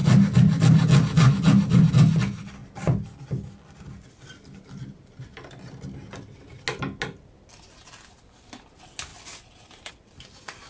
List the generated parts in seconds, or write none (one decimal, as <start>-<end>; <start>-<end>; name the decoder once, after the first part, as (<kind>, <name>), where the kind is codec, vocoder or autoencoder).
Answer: none